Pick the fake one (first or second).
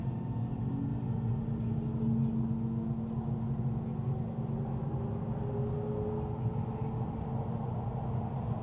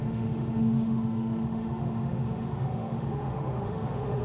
second